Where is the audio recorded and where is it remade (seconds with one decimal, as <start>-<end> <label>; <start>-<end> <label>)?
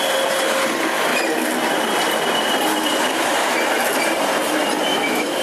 0.0-4.9 recorded; 4.9-5.4 remade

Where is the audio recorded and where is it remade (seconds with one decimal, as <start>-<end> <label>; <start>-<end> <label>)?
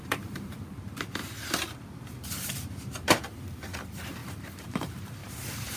0.0-5.8 remade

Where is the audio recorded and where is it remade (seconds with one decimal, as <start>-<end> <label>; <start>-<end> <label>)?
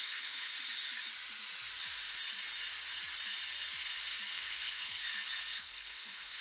0.0-0.5 remade; 0.5-4.3 recorded; 4.3-5.0 remade; 5.0-5.5 recorded; 5.5-6.4 remade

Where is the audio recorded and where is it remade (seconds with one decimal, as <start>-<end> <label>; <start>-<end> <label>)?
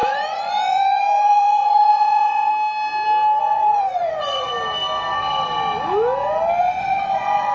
0.0-2.5 remade; 2.5-3.4 recorded; 3.4-4.5 remade; 4.5-6.6 recorded; 6.6-7.5 remade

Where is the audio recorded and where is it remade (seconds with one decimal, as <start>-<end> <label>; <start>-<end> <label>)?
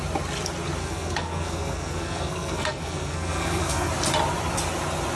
0.0-0.8 recorded; 0.8-3.9 remade; 3.9-5.1 recorded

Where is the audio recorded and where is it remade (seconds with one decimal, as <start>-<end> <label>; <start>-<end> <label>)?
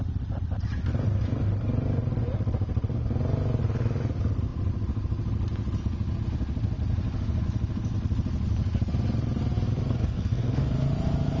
0.0-10.0 recorded; 10.0-10.7 remade; 10.7-11.4 recorded